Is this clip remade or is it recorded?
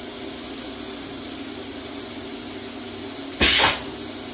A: recorded